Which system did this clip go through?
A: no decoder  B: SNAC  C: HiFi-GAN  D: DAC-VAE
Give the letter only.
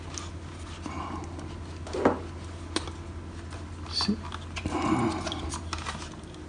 A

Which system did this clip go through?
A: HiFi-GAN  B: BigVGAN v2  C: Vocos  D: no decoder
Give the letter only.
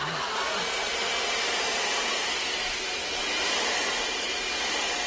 D